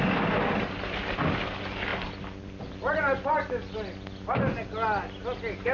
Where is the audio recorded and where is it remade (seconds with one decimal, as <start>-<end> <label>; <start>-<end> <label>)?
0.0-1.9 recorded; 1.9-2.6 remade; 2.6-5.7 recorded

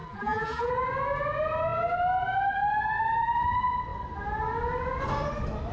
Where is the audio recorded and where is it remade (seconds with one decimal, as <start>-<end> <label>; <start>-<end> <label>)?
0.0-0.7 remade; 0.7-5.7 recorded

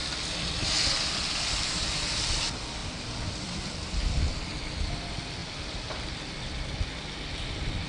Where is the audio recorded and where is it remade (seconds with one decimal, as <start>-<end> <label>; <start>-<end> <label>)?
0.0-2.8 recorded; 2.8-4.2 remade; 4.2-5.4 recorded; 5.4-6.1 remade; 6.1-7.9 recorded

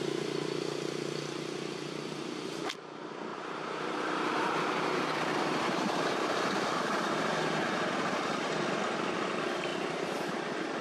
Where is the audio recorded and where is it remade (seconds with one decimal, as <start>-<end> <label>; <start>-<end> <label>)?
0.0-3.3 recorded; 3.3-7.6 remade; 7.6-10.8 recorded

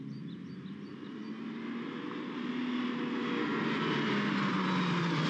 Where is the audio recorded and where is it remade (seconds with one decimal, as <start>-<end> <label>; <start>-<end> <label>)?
0.0-0.9 remade; 0.9-4.1 recorded; 4.1-5.3 remade

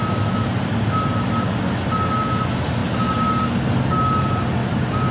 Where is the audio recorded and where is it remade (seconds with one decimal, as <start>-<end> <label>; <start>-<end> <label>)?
0.0-4.6 recorded; 4.6-5.1 remade

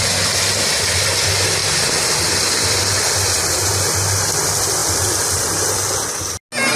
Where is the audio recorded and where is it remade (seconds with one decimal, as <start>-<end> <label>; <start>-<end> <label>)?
0.0-4.8 recorded; 4.8-5.4 remade; 5.4-6.8 recorded

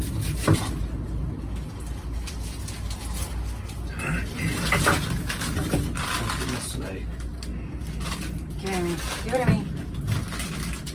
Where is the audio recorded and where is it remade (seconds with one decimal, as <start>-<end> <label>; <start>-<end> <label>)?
0.0-10.9 recorded